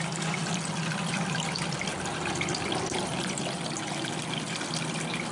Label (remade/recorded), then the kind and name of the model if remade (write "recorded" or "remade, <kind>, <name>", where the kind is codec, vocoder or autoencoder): recorded